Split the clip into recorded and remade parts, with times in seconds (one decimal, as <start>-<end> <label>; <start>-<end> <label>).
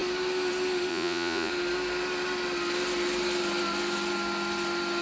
0.0-0.9 recorded; 0.9-1.5 remade; 1.5-5.0 recorded